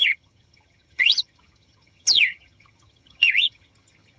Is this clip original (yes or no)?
no